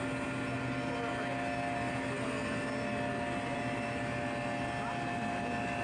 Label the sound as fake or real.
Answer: real